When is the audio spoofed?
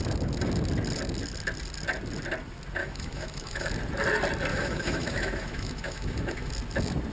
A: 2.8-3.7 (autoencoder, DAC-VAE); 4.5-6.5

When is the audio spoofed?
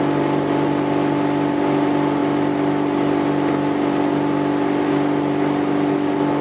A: none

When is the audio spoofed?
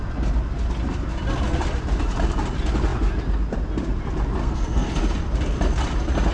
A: 4.4-4.9 (codec, SNAC)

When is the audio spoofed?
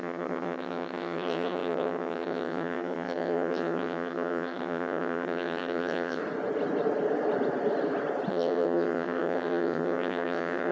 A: 0.0-6.2 (vocoder, HiFi-GAN); 8.3-10.7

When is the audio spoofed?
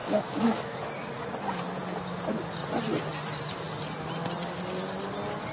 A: 0.0-0.9 (autoencoder, DAC-VAE)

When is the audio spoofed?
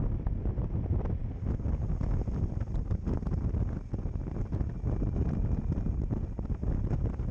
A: none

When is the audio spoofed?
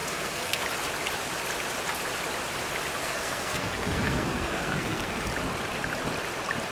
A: 0.0-0.6 (codec, SNAC); 3.0-5.3